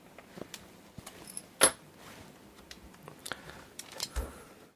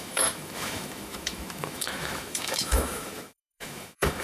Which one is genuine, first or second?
first